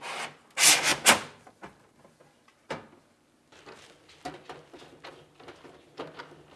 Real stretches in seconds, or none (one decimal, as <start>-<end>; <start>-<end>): 0.0-6.6